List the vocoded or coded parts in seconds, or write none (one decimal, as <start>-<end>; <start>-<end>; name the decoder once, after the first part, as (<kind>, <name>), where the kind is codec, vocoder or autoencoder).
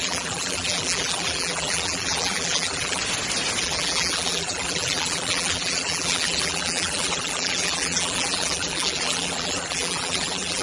0.0-3.0 (vocoder, BigVGAN v2); 3.6-10.6